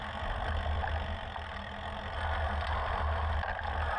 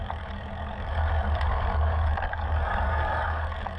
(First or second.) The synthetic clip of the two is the second